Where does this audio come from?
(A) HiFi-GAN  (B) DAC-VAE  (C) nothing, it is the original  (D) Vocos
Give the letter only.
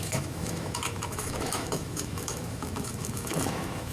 B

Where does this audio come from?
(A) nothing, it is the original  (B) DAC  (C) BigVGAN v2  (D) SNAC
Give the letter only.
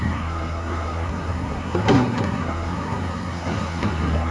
D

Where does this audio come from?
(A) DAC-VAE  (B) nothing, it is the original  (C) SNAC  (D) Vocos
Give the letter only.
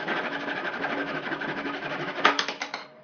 A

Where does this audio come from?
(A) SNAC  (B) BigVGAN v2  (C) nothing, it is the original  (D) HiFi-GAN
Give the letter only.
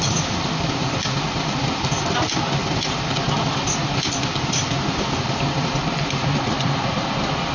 C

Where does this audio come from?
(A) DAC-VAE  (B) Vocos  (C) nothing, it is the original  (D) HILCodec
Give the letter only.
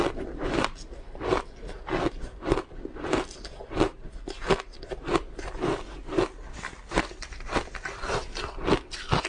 C